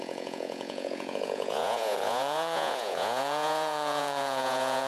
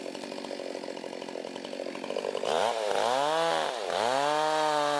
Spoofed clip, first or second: first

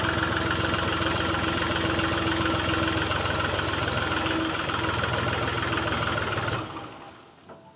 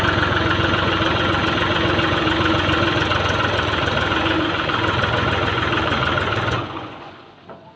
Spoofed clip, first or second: second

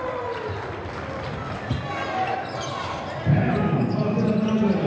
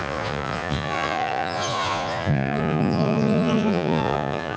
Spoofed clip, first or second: second